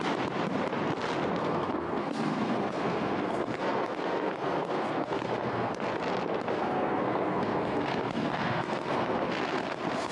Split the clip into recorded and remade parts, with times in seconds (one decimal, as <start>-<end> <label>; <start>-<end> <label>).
0.0-1.4 recorded; 1.4-5.9 remade; 5.9-6.5 recorded; 6.5-10.1 remade